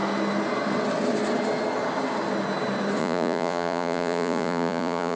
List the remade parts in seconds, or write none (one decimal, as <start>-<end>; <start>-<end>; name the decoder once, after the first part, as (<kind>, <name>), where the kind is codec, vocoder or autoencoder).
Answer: 3.0-5.2 (vocoder, Vocos)

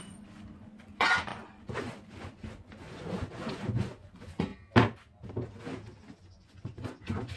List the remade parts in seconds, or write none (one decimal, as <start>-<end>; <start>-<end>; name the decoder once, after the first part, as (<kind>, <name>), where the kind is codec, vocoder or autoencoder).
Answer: 0.0-4.5 (vocoder, Vocos); 6.2-7.4

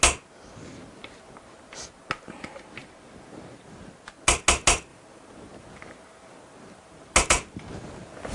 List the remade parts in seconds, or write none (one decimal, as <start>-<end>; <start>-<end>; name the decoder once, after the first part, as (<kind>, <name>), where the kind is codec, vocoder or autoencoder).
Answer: none

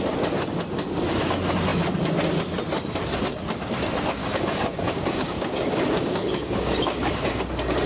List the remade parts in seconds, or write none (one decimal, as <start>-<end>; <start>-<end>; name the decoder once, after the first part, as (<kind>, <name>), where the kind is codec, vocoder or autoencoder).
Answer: 4.2-7.4 (codec, DAC)

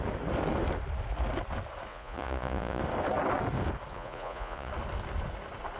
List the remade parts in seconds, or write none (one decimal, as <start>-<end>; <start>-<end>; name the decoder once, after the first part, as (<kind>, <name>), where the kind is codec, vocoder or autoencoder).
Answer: 1.9-2.8 (vocoder, Vocos); 3.9-4.7

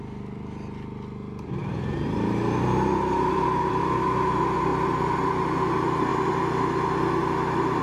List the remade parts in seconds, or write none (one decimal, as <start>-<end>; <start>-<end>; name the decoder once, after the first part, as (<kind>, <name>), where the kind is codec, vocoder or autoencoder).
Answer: 1.6-3.8 (vocoder, BigVGAN v2); 4.7-5.4

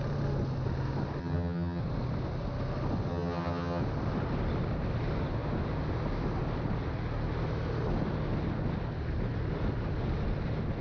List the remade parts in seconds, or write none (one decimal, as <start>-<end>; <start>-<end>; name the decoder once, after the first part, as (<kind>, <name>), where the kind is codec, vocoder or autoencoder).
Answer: 1.2-1.8 (vocoder, HiFi-GAN); 3.1-3.8

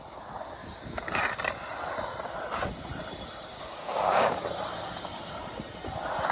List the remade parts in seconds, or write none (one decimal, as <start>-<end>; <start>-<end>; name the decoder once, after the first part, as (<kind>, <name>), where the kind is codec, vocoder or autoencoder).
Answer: 0.6-1.2 (codec, DAC); 3.5-4.4